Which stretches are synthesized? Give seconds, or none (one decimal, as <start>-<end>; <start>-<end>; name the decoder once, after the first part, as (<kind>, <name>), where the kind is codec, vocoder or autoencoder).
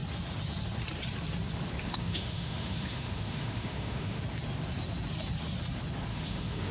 1.8-4.2 (autoencoder, DAC-VAE); 6.1-6.7